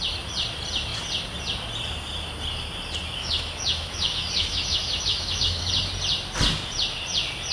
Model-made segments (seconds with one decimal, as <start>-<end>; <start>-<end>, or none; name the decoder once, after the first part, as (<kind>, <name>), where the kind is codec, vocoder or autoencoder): 3.2-5.7 (autoencoder, DAC-VAE)